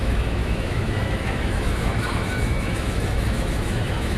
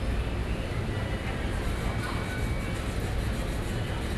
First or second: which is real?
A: second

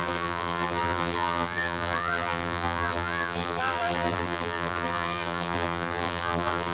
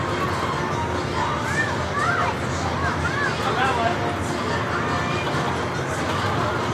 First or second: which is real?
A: second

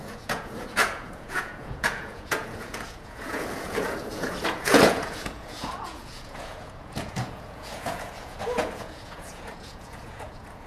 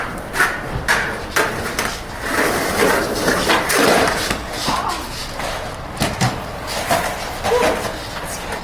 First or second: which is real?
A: second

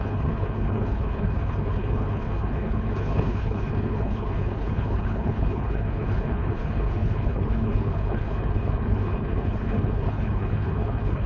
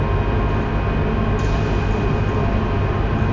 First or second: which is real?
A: second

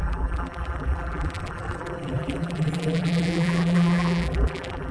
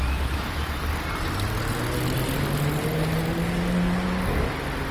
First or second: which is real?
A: second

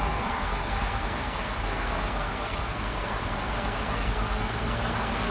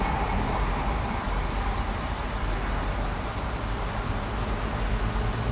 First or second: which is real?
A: second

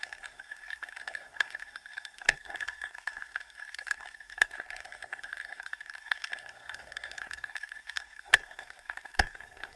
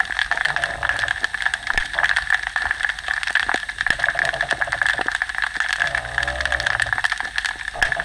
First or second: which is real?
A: second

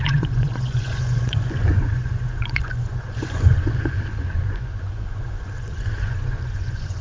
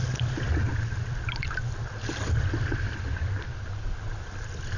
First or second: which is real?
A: second